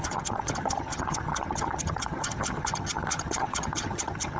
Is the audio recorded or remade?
remade